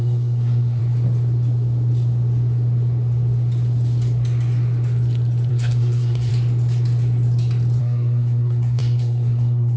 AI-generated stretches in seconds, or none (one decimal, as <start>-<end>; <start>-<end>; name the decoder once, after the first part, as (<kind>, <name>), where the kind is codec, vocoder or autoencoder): 0.0-0.8 (codec, SNAC); 5.5-6.3; 7.8-9.8